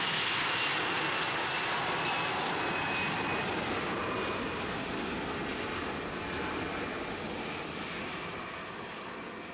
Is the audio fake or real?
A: real